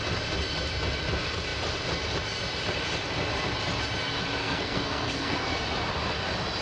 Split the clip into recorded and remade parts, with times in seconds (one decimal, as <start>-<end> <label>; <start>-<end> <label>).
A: 0.0-4.4 recorded; 4.4-5.5 remade; 5.5-6.6 recorded